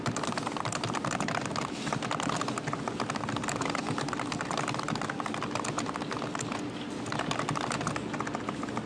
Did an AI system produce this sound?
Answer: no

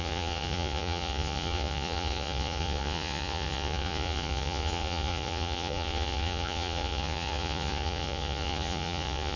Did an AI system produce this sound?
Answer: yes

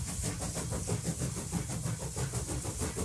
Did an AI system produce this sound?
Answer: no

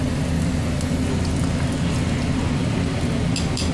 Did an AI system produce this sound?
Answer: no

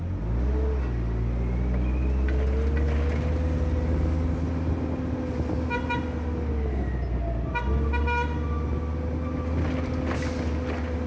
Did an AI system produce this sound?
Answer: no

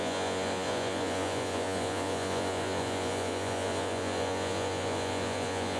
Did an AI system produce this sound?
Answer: yes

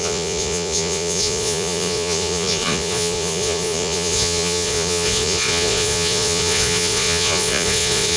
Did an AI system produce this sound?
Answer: yes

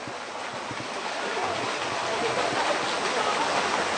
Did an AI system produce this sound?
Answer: no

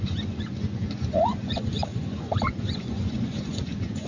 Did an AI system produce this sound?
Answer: yes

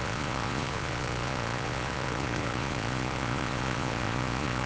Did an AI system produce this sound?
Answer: yes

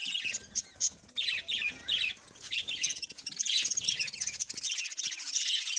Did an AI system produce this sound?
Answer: yes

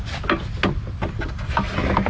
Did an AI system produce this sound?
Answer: no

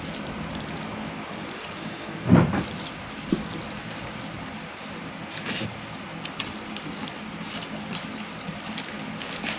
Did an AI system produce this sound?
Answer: no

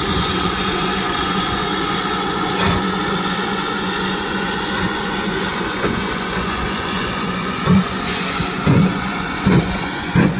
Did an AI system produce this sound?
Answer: yes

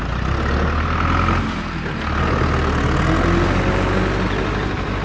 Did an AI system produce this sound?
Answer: no